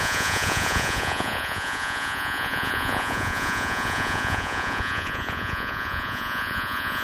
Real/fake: fake